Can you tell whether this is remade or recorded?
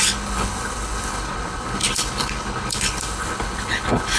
remade